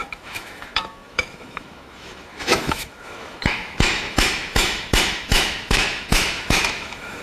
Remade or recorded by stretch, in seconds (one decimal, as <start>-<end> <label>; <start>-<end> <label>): 0.0-7.2 remade